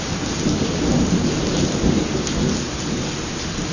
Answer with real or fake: real